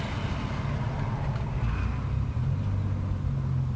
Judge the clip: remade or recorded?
recorded